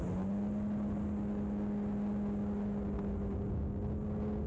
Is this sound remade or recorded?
recorded